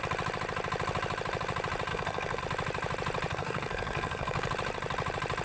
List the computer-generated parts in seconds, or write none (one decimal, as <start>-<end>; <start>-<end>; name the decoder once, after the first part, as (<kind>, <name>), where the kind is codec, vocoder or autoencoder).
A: 1.9-2.4 (codec, SNAC); 3.3-4.5